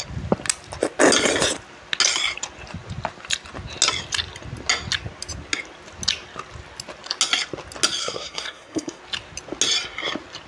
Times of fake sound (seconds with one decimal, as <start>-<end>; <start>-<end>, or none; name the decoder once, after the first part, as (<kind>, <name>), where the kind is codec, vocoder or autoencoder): 8.0-9.0 (codec, SNAC)